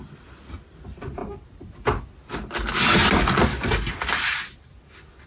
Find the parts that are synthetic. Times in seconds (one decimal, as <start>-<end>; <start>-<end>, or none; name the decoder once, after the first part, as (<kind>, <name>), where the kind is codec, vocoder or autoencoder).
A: none